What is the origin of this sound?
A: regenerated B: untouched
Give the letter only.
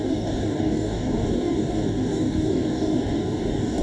A